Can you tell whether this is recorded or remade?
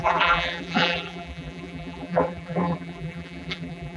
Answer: remade